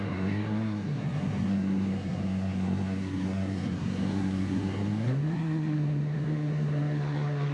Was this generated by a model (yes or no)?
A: yes